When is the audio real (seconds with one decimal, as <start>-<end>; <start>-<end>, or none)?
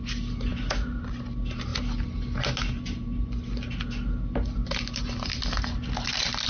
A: 0.0-6.5